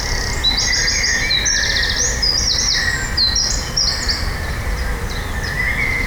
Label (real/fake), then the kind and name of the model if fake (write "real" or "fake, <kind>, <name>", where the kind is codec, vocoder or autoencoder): real